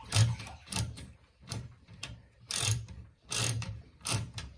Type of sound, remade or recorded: remade